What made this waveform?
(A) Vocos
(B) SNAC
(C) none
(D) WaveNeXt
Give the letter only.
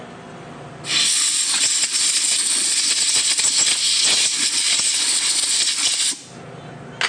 C